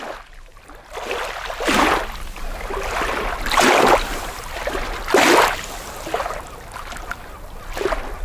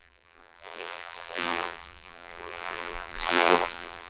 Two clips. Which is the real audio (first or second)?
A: first